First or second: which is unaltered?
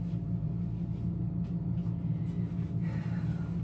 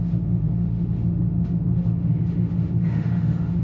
first